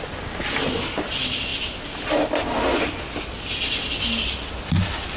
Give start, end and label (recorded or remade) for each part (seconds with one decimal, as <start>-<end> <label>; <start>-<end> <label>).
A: 0.0-5.2 recorded